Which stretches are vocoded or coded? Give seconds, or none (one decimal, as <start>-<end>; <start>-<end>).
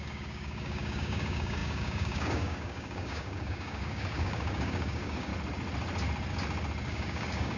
0.0-5.3; 6.9-7.6